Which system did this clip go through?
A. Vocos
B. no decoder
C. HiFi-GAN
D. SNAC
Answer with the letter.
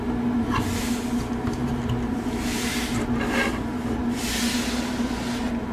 B